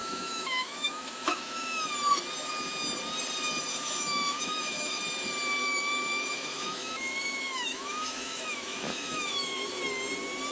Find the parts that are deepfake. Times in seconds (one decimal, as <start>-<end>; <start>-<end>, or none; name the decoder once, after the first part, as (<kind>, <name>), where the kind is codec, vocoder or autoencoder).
0.0-1.9 (autoencoder, DAC-VAE); 3.7-5.0; 5.6-9.8